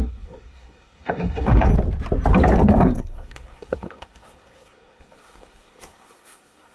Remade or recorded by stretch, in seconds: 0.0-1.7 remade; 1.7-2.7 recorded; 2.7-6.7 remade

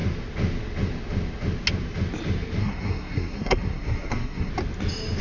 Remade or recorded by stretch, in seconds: 0.0-2.6 recorded; 2.6-4.5 remade; 4.5-5.2 recorded

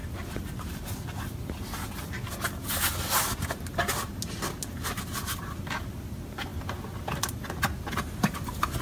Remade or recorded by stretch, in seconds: 0.0-8.8 recorded

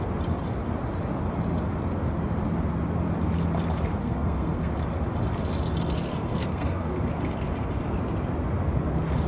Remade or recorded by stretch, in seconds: 0.0-4.0 recorded; 4.0-4.7 remade; 4.7-6.1 recorded; 6.1-6.9 remade; 6.9-9.3 recorded

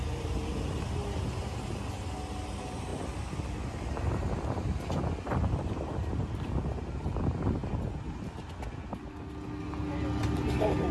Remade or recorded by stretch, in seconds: 0.0-10.9 recorded

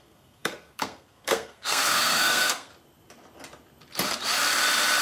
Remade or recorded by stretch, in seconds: 0.0-2.7 remade; 2.7-5.0 recorded

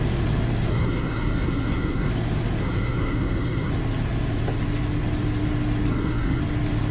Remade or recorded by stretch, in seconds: 0.0-0.7 recorded; 0.7-2.1 remade; 2.1-2.6 recorded; 2.6-3.7 remade; 3.7-5.9 recorded; 5.9-6.4 remade; 6.4-6.9 recorded

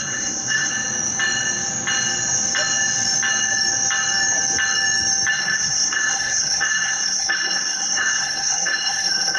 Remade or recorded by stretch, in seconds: 0.0-0.7 remade; 0.7-5.3 recorded; 5.3-9.4 remade